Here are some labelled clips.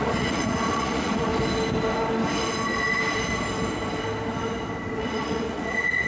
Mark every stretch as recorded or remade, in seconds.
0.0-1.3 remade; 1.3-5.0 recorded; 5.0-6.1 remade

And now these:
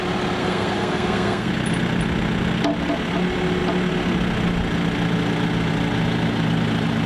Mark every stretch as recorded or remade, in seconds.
0.0-0.4 recorded; 0.4-1.5 remade; 1.5-7.1 recorded

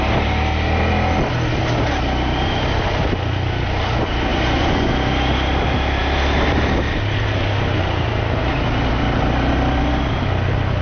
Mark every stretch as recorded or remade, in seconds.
0.0-4.3 recorded; 4.3-4.9 remade; 4.9-10.8 recorded

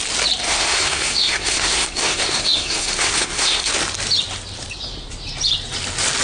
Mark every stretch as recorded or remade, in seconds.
0.0-0.4 recorded; 0.4-3.7 remade; 3.7-6.2 recorded

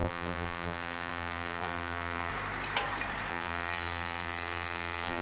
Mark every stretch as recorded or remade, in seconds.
0.0-2.3 remade; 2.3-3.3 recorded; 3.3-5.2 remade

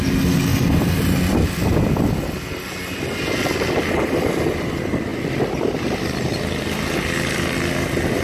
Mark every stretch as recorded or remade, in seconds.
0.0-0.5 recorded; 0.5-1.8 remade; 1.8-5.1 recorded; 5.1-6.7 remade; 6.7-8.2 recorded